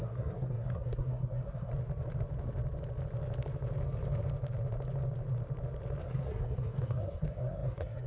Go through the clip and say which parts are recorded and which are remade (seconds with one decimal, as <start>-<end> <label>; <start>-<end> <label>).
0.0-1.7 remade; 1.7-6.0 recorded; 6.0-8.1 remade